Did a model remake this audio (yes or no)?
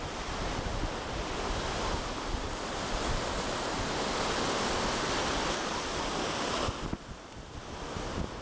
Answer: no